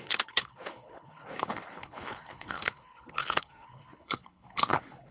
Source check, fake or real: fake